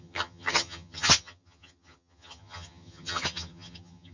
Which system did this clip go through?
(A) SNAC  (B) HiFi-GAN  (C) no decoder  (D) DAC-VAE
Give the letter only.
B